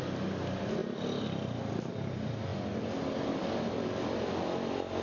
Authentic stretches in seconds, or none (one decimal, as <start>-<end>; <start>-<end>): 0.0-5.0